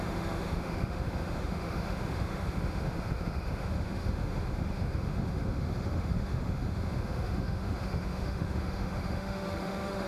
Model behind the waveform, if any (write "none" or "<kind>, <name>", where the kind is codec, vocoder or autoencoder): autoencoder, DAC-VAE